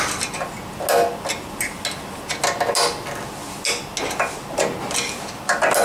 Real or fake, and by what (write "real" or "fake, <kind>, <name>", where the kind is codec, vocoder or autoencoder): real